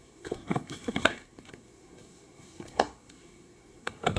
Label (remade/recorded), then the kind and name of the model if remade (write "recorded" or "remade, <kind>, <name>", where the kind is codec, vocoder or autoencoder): remade, codec, SNAC